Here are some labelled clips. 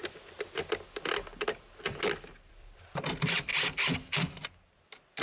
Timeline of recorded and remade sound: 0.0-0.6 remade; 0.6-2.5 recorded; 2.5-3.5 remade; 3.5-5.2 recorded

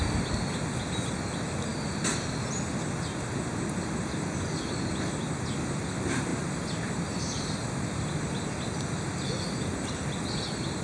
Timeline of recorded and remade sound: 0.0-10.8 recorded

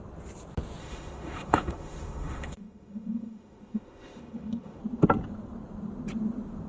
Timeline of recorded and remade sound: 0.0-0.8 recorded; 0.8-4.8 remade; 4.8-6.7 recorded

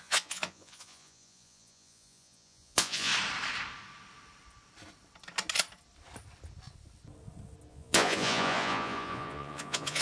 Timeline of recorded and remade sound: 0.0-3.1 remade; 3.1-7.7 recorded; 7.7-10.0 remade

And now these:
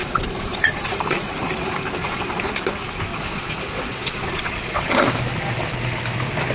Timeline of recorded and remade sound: 0.0-1.3 remade; 1.3-2.0 recorded; 2.0-2.5 remade; 2.5-3.1 recorded; 3.1-4.9 remade; 4.9-6.5 recorded

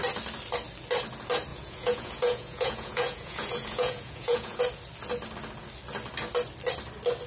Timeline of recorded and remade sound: 0.0-1.5 recorded; 1.5-4.6 remade; 4.6-7.3 recorded

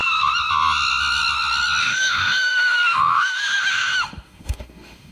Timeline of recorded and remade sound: 0.0-1.8 recorded; 1.8-5.1 remade